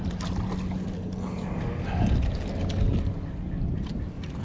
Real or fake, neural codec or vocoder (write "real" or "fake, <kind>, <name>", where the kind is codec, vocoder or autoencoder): real